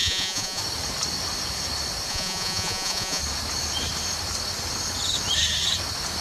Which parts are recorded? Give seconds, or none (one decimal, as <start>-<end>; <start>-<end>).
0.6-2.1; 3.2-6.2